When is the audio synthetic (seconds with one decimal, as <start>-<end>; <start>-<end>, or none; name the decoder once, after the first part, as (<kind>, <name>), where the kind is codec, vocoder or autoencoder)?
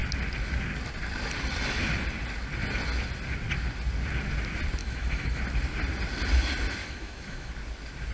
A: 4.8-5.4 (autoencoder, DAC-VAE); 6.8-7.5